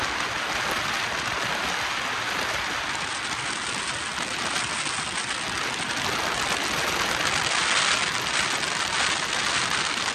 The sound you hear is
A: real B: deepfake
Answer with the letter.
A